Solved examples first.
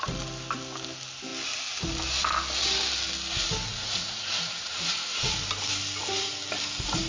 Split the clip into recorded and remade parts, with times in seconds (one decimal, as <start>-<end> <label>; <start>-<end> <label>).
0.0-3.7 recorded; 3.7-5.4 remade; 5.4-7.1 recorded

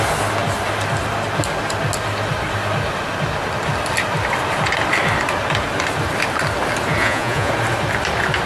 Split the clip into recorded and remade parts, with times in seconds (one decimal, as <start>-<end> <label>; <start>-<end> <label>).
0.0-7.0 recorded; 7.0-7.5 remade; 7.5-8.5 recorded

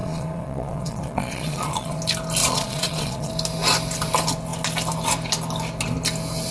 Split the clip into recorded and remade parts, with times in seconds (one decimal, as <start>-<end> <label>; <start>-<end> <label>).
0.0-2.0 remade; 2.0-2.4 recorded; 2.4-3.3 remade; 3.3-6.5 recorded

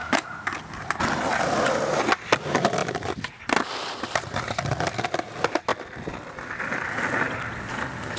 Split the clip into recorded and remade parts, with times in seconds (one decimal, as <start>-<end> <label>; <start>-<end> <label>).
0.0-8.2 recorded